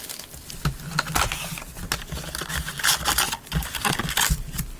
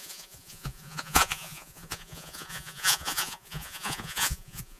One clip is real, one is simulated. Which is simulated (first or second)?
second